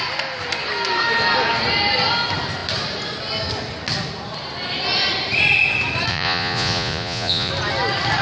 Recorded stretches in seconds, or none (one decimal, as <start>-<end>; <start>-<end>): 0.0-6.1; 7.5-8.2